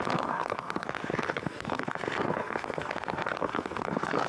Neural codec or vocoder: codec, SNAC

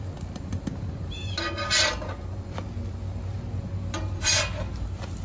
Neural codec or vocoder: none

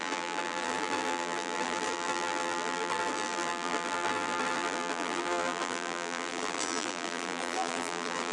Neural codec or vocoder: vocoder, BigVGAN v2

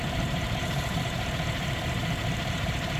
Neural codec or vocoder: vocoder, BigVGAN v2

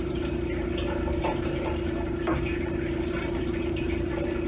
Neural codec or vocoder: vocoder, BigVGAN v2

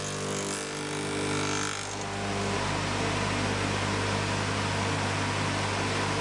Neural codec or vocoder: none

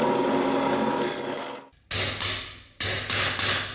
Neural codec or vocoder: none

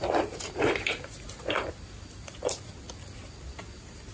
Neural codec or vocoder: none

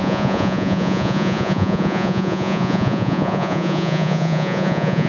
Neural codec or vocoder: vocoder, Vocos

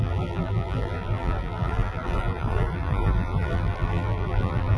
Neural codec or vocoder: vocoder, BigVGAN v2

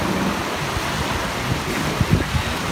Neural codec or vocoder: none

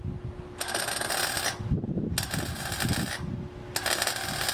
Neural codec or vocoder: none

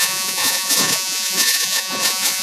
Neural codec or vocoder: vocoder, Vocos